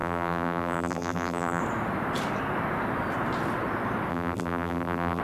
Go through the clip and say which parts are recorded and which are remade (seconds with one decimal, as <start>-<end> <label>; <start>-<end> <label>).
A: 0.0-1.6 remade; 1.6-4.1 recorded; 4.1-5.2 remade